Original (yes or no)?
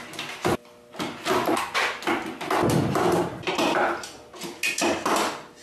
yes